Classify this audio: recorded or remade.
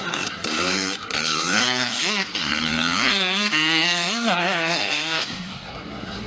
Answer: remade